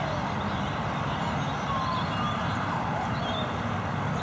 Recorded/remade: recorded